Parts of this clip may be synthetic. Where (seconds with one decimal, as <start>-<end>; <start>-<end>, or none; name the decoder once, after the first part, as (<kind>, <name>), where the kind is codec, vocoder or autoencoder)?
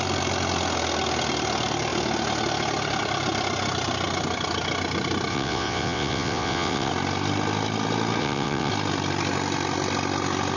5.3-6.9 (vocoder, WaveNeXt); 8.2-8.7